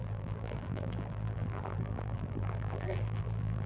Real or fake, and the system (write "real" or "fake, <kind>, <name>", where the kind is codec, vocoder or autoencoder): fake, vocoder, BigVGAN v2